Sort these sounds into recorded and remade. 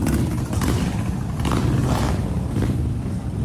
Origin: recorded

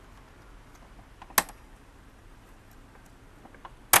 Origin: recorded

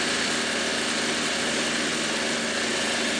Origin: recorded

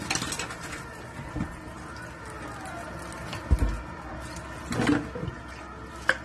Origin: recorded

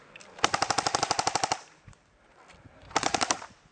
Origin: remade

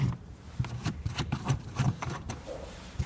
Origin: remade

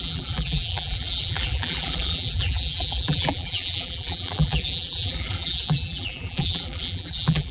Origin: remade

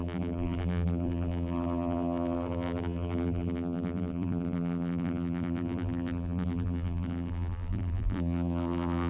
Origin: remade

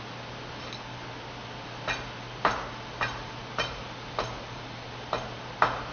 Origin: recorded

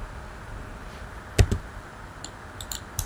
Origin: recorded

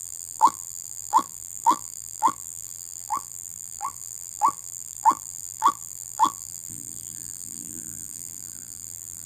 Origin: remade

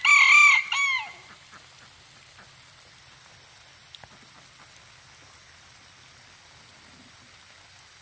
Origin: recorded